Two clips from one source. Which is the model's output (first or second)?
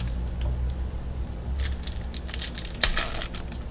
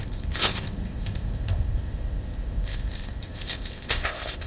second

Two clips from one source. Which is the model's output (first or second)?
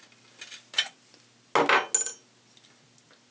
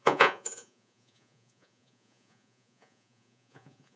second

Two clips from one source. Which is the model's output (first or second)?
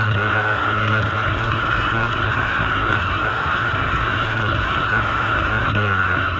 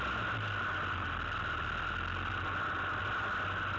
first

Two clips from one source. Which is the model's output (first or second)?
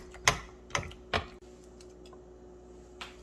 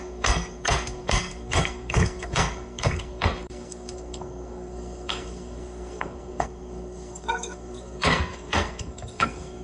second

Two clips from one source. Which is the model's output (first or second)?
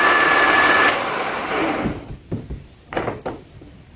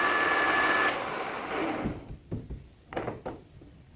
first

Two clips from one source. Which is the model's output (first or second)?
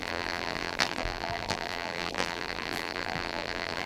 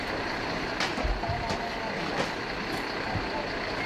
first